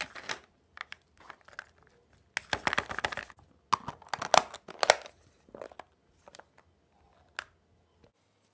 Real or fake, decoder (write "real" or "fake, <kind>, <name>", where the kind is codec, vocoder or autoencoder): real